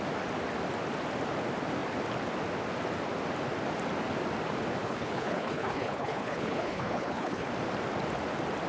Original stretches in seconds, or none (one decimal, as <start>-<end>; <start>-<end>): 0.0-4.8; 7.5-8.7